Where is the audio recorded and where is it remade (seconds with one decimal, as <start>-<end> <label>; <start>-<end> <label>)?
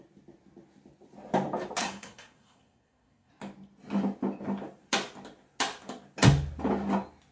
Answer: 0.0-1.8 recorded; 1.8-3.3 remade; 3.3-7.3 recorded